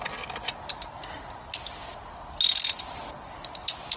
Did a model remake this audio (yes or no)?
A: no